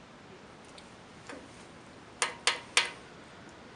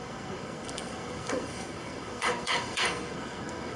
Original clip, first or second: first